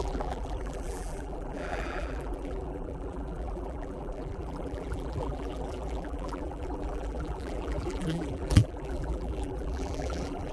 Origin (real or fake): fake